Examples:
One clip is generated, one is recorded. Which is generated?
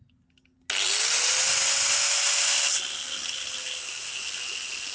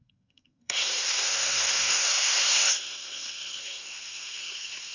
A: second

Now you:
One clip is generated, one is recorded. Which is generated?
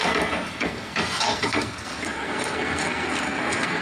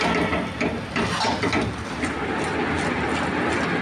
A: first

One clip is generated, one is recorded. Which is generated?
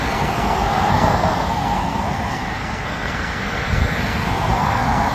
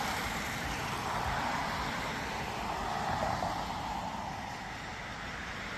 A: first